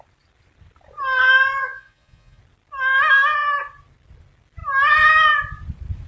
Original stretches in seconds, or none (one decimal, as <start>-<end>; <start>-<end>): 0.0-1.6; 2.4-6.1